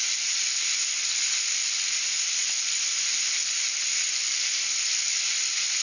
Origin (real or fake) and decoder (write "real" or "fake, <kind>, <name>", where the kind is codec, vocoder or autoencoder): real